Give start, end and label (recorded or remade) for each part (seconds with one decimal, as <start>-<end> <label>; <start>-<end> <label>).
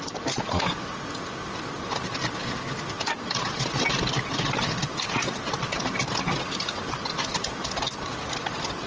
0.0-8.9 recorded